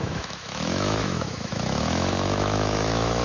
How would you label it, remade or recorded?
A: remade